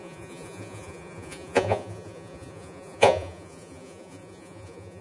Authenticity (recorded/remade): remade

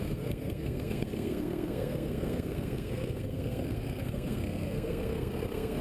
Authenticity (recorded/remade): remade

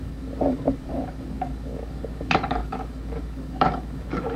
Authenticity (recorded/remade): remade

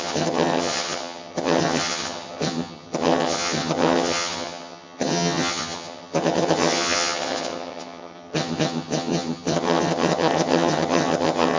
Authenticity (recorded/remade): remade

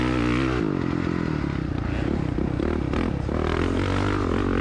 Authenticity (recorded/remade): recorded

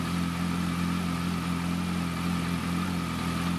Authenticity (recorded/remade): recorded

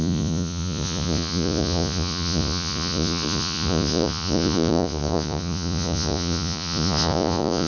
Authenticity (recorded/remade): remade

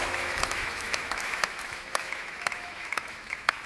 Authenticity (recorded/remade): remade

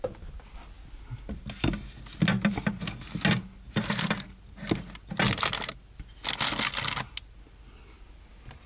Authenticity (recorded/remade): recorded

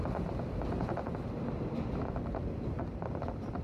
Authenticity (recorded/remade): recorded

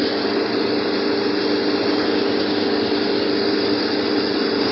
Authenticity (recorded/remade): recorded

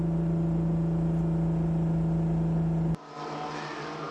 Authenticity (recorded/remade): recorded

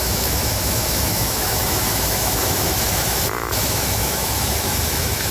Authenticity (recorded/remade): remade